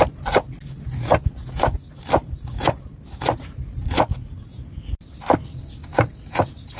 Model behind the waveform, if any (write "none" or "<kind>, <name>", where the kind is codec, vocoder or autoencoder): none